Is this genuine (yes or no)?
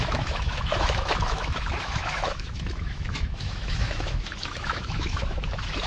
no